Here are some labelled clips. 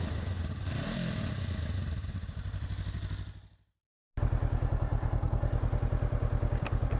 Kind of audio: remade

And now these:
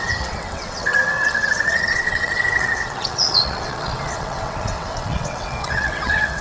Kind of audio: remade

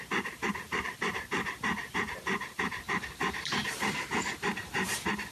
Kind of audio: remade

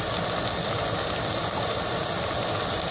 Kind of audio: recorded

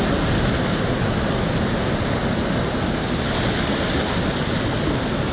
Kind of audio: recorded